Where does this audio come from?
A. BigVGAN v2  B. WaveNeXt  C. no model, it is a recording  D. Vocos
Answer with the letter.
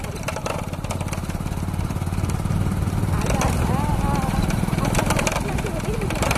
C